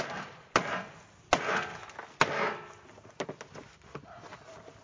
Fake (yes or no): no